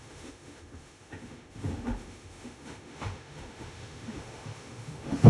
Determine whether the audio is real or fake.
fake